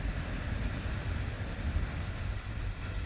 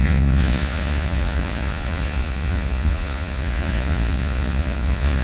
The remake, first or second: second